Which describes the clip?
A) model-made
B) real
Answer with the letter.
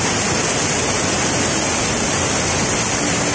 B